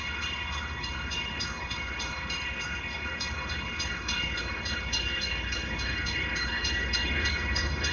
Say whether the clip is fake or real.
fake